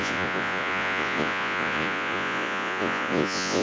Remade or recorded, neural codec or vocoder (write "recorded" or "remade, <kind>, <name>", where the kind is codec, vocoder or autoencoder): remade, vocoder, Vocos